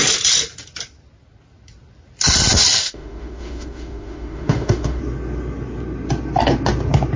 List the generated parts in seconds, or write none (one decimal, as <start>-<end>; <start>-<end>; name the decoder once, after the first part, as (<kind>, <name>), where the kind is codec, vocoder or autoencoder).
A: 2.8-5.0 (autoencoder, DAC-VAE)